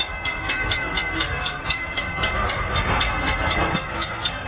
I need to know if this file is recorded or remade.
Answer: remade